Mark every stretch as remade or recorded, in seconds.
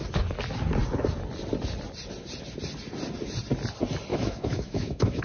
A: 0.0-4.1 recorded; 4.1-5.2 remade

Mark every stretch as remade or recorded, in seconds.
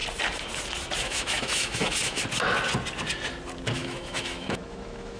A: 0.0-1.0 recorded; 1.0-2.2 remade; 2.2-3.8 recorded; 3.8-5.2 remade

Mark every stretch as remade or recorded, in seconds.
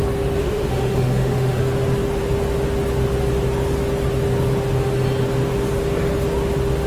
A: 0.0-0.4 recorded; 0.4-1.6 remade; 1.6-6.9 recorded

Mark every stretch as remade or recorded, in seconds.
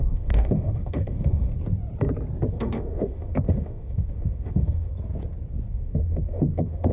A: 0.0-1.5 remade; 1.5-2.5 recorded; 2.5-4.9 remade; 4.9-5.7 recorded; 5.7-6.9 remade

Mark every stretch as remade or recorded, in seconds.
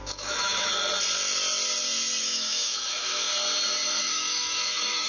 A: 0.0-0.7 remade; 0.7-2.2 recorded; 2.2-3.3 remade; 3.3-4.0 recorded; 4.0-5.1 remade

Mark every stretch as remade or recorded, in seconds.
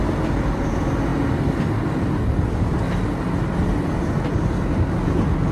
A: 0.0-5.5 recorded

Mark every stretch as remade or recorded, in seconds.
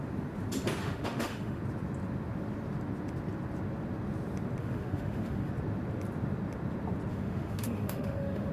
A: 0.0-0.8 recorded; 0.8-1.6 remade; 1.6-4.6 recorded; 4.6-5.5 remade; 5.5-7.1 recorded; 7.1-8.5 remade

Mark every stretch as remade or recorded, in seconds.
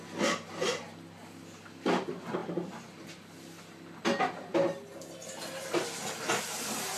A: 0.0-7.0 recorded